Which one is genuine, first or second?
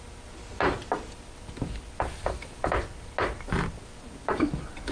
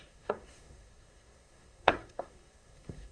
first